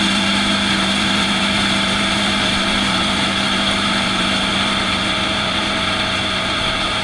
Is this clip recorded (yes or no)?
no